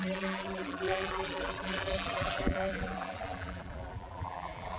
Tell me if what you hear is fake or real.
fake